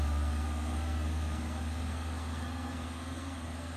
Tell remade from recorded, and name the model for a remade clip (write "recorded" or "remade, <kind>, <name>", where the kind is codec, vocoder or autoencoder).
remade, codec, SNAC